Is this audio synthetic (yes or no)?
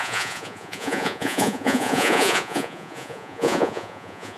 yes